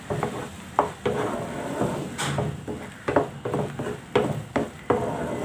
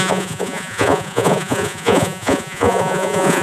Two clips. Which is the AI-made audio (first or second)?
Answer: second